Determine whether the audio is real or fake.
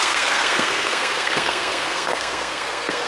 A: fake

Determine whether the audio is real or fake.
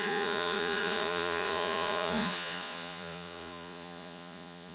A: fake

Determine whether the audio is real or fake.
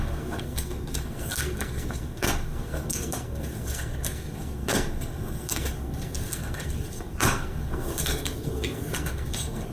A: fake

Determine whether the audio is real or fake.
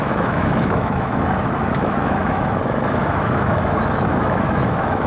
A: fake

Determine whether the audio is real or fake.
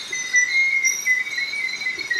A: real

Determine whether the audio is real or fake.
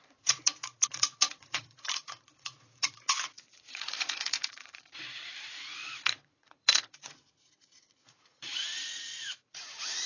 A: fake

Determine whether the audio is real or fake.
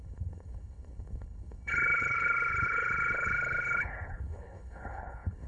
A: fake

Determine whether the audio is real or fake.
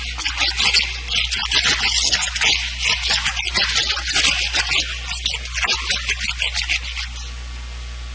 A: real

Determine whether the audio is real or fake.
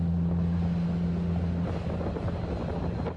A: real